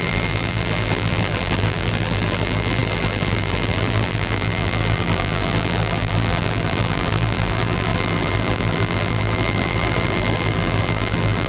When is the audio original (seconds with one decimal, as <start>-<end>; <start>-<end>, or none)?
none